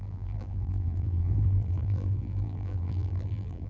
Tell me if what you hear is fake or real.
fake